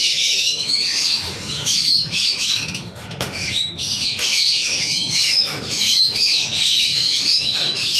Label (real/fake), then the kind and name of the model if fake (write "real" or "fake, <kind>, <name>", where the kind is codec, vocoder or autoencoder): fake, autoencoder, DAC-VAE